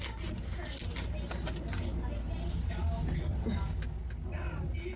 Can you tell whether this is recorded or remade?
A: recorded